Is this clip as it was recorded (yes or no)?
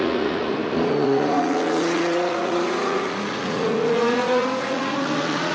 no